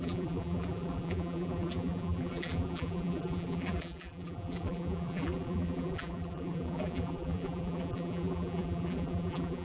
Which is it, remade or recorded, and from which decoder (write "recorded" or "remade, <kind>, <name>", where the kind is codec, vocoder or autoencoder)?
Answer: remade, vocoder, BigVGAN v2